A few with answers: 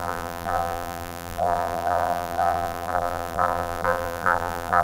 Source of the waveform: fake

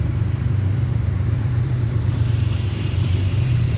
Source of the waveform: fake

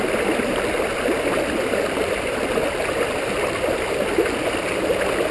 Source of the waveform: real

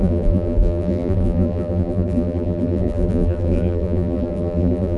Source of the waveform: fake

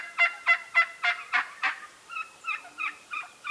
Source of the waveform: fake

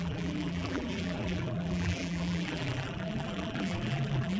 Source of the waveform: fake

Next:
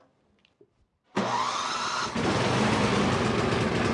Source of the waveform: real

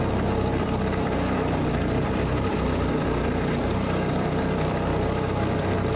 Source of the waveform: fake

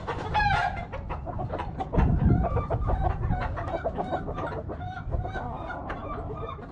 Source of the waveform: fake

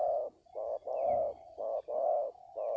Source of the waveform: real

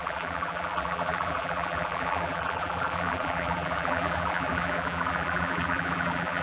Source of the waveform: fake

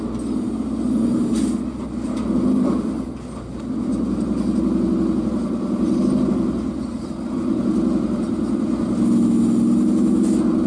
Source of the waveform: real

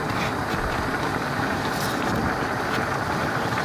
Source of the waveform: fake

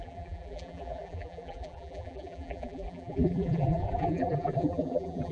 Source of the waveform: fake